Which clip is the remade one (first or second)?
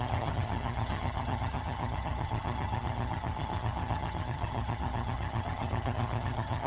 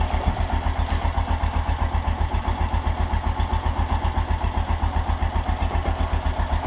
first